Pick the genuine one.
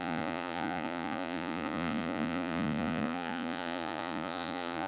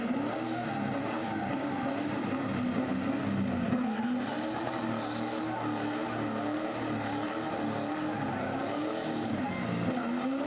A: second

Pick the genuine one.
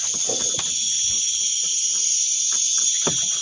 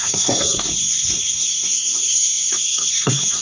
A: first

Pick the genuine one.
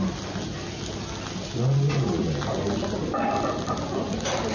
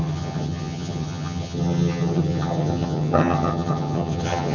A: first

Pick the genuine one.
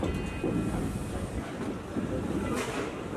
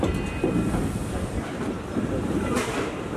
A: first